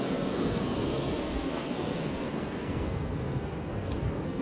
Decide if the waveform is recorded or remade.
remade